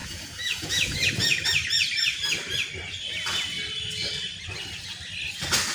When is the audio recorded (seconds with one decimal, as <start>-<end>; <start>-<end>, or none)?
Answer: 1.1-5.7